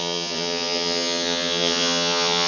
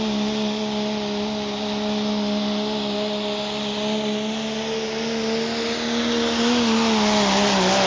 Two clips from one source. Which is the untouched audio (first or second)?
second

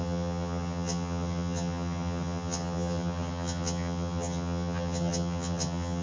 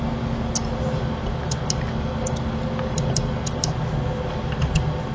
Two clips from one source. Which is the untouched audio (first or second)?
second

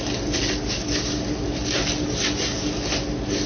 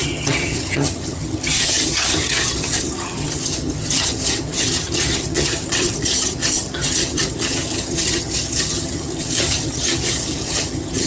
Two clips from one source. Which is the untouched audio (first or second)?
first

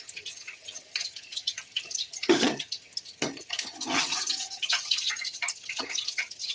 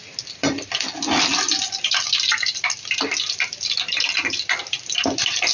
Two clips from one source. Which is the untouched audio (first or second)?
second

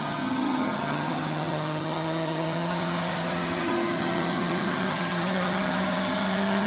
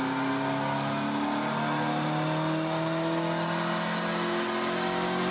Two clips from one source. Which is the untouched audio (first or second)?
second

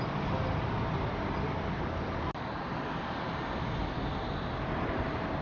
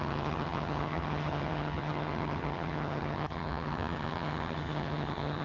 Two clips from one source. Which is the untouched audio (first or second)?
first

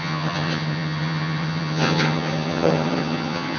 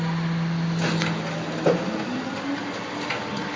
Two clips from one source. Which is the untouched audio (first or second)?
second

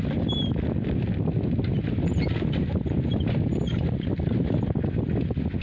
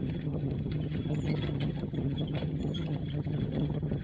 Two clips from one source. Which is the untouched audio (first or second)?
first